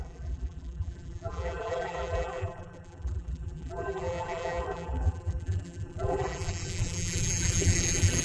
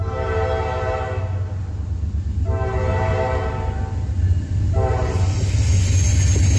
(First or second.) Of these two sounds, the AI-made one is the first